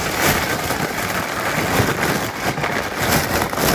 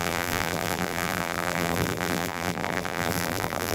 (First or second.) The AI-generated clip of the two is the second